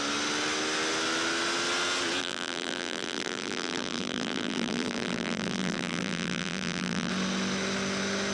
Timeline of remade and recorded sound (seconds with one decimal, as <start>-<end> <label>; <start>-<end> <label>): 0.0-2.2 recorded; 2.2-7.1 remade; 7.1-8.3 recorded